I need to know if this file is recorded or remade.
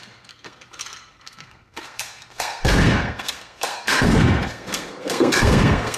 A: remade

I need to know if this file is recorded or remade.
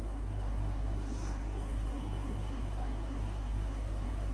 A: remade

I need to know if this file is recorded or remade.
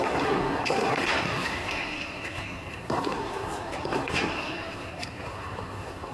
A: remade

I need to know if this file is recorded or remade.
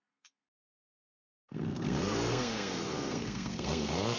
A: remade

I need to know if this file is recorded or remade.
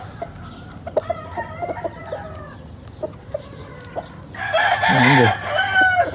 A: recorded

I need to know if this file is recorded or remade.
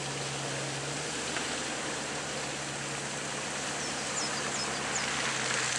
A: recorded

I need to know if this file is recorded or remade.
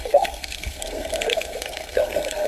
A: remade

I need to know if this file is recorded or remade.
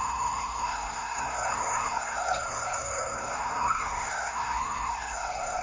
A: remade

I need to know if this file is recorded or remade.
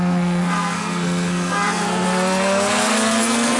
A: remade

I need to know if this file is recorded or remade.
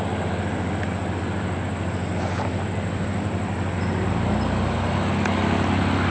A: recorded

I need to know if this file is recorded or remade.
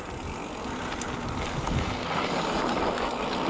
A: recorded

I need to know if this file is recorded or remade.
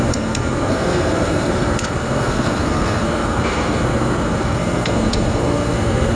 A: remade